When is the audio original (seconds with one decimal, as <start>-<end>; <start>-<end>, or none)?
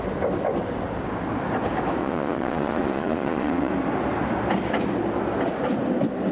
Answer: 0.0-2.0; 3.7-6.3